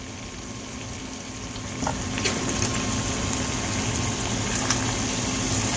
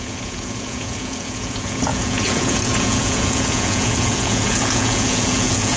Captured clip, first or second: first